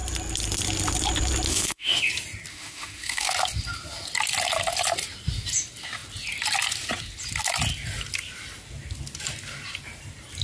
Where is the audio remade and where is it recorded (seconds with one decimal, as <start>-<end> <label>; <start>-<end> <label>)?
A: 0.0-1.5 recorded; 1.5-2.0 remade; 2.0-2.5 recorded; 2.5-3.3 remade; 3.3-10.4 recorded